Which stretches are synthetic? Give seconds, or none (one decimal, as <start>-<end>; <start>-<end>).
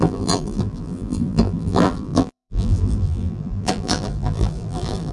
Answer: 0.0-5.1